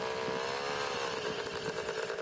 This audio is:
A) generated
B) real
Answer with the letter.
B